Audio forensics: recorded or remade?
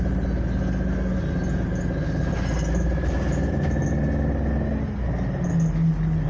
recorded